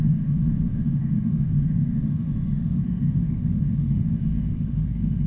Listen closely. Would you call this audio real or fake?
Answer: fake